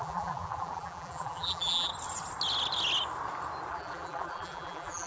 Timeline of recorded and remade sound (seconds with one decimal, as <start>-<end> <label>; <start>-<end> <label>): 0.0-1.9 remade; 1.9-3.7 recorded; 3.7-5.1 remade